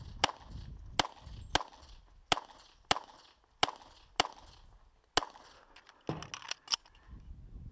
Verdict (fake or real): real